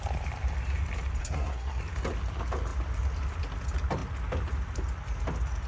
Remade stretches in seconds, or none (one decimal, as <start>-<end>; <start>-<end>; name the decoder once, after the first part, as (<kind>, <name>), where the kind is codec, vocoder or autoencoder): 1.2-1.8 (codec, SNAC)